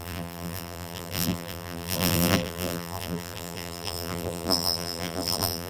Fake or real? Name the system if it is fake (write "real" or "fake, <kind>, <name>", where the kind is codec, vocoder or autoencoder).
fake, vocoder, BigVGAN v2